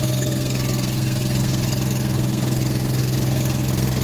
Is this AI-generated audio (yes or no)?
yes